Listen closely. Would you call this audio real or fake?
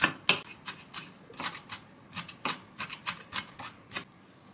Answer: real